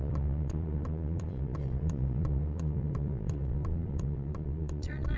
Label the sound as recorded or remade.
remade